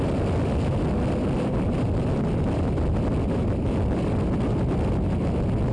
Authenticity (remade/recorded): recorded